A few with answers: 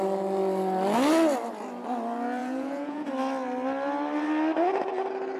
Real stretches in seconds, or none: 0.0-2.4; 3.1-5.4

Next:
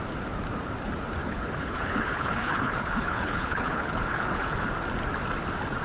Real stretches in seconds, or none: 0.0-1.2; 4.7-5.8

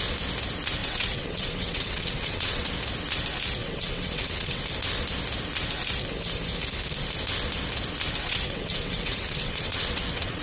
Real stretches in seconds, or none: 0.0-0.8; 2.7-3.6; 4.6-8.2

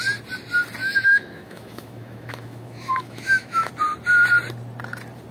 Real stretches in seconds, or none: 0.0-0.8; 3.7-5.3

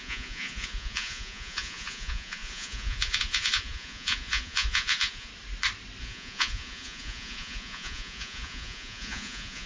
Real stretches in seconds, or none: 5.3-6.0

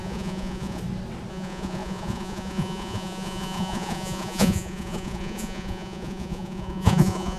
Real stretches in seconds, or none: 0.8-1.3